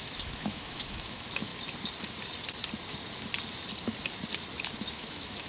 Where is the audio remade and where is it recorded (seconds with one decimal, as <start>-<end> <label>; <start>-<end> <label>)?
0.0-1.5 remade; 1.5-4.8 recorded; 4.8-5.5 remade